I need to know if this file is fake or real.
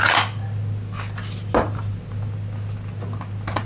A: real